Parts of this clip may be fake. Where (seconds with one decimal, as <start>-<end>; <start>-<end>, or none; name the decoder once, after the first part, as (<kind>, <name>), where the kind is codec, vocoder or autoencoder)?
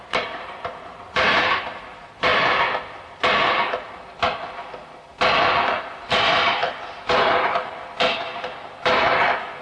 0.0-2.3 (vocoder, BigVGAN v2); 5.8-9.6